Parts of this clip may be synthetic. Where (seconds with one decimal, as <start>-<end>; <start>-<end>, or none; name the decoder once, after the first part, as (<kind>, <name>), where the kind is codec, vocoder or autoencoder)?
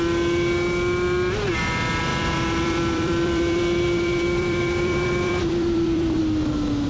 2.1-6.2 (vocoder, BigVGAN v2)